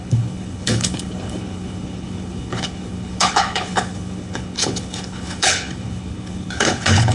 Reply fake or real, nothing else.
fake